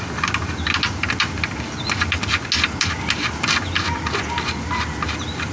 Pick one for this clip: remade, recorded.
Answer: recorded